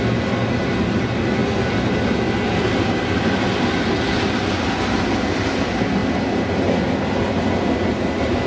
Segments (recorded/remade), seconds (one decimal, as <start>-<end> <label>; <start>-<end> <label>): 0.0-8.5 recorded